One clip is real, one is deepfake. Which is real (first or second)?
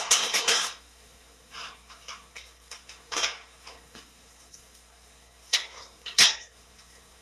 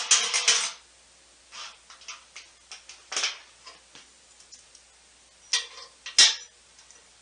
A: second